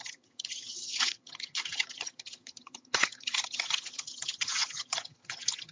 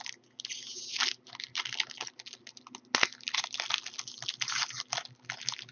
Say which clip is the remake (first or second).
first